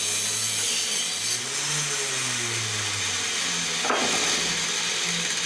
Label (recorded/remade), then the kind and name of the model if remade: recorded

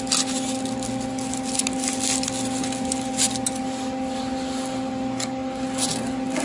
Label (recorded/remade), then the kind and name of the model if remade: recorded